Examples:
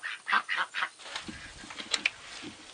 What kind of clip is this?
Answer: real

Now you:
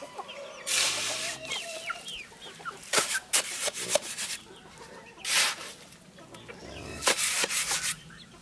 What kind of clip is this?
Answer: real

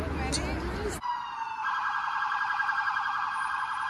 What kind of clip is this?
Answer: real